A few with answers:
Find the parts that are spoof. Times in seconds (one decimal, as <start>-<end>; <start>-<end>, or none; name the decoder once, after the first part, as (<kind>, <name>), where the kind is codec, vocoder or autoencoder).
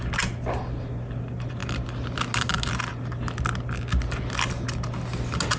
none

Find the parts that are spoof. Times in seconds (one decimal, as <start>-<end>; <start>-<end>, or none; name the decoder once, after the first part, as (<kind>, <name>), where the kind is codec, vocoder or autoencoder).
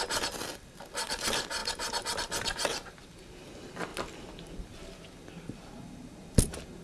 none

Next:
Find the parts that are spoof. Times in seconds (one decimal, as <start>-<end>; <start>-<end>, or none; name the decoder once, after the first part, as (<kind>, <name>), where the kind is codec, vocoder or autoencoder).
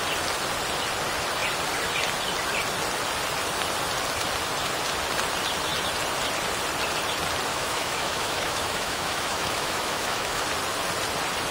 7.5-10.4 (autoencoder, DAC-VAE)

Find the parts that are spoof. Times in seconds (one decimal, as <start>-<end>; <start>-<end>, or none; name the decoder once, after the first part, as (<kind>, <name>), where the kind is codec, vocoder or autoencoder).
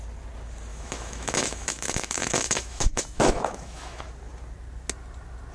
0.7-4.0 (autoencoder, DAC-VAE)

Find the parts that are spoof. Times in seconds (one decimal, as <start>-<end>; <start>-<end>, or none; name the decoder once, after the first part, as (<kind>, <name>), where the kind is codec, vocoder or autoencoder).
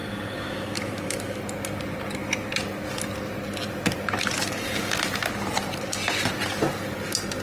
0.0-1.4 (autoencoder, DAC-VAE)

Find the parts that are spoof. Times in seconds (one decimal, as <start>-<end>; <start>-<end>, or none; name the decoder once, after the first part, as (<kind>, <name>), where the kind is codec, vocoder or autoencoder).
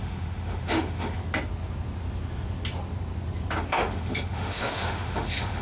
0.0-1.2 (autoencoder, DAC-VAE); 3.6-5.6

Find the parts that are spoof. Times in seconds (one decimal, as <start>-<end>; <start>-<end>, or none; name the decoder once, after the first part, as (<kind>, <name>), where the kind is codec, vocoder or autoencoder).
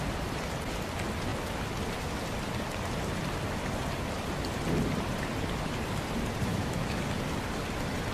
6.5-7.0 (autoencoder, DAC-VAE)